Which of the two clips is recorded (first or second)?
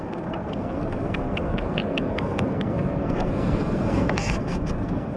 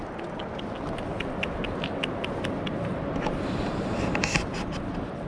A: second